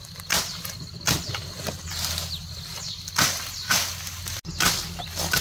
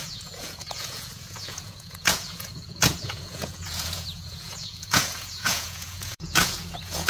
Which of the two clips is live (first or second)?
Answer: first